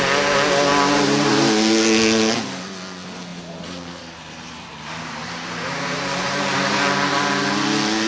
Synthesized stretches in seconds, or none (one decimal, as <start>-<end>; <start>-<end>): 3.3-6.5